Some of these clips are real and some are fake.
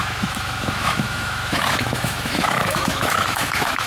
fake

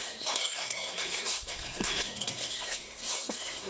fake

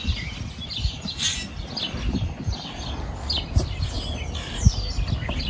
real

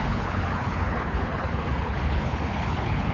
fake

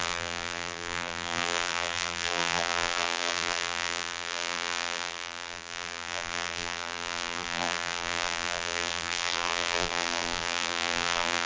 fake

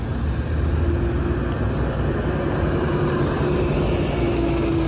real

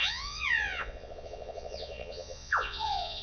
fake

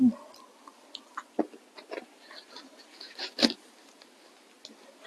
real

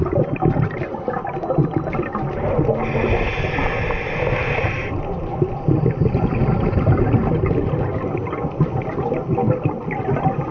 real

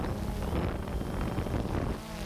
real